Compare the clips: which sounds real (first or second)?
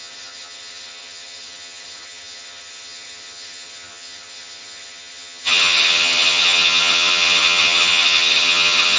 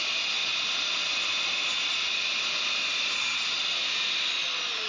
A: second